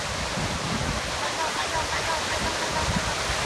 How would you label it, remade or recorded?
recorded